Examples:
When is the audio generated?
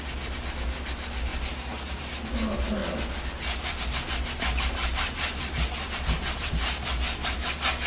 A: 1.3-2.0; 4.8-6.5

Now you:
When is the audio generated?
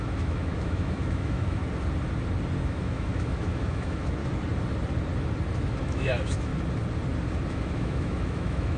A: 0.0-1.6; 2.6-4.2; 5.8-6.5; 7.5-8.8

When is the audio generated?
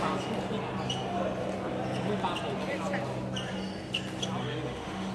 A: 4.4-5.1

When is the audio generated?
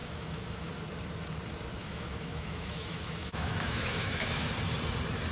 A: 0.0-0.7; 1.8-4.5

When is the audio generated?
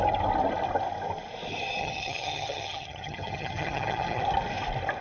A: 1.8-4.2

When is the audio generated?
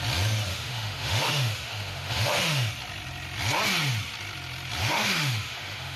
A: 0.5-2.7; 4.8-6.0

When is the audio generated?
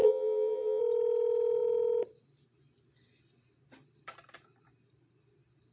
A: 0.0-0.8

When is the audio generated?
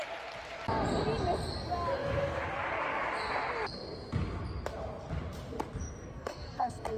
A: 6.1-7.0